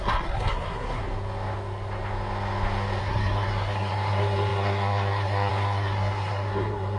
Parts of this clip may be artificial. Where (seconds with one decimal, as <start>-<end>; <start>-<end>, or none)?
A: 0.0-1.0; 3.0-7.0